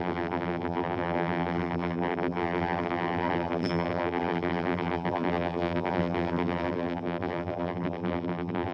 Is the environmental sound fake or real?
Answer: fake